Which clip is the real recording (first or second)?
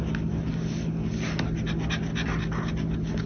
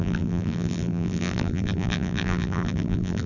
first